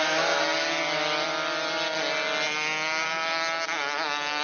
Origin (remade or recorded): recorded